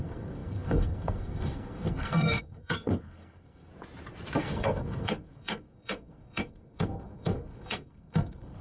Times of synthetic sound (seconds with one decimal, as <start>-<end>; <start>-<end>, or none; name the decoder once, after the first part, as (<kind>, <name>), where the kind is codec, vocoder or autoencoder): 0.0-3.7 (codec, SNAC); 4.4-8.6